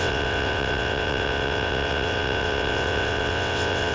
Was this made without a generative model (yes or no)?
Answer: no